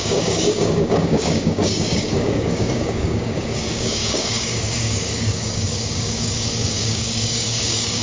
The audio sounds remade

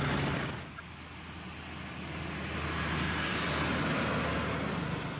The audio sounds recorded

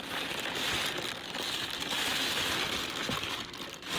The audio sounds recorded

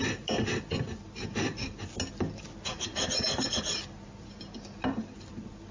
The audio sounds recorded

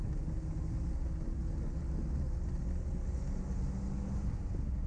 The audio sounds recorded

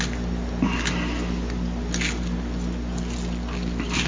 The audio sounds recorded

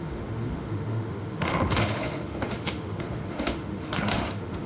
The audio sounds remade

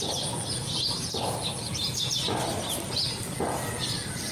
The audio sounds recorded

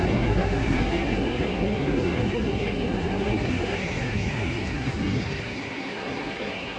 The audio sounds remade